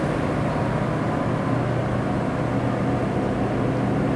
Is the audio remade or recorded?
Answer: recorded